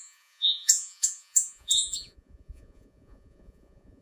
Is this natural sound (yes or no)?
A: no